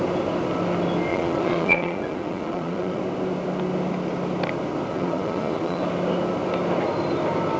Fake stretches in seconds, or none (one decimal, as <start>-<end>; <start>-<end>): 1.1-3.0; 4.9-5.8